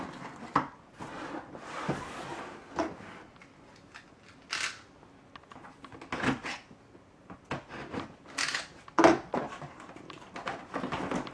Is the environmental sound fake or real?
real